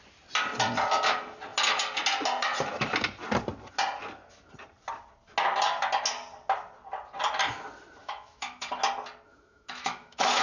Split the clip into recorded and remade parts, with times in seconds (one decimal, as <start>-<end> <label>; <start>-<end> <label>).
0.0-8.0 recorded; 8.0-8.7 remade; 8.7-9.3 recorded; 9.3-10.4 remade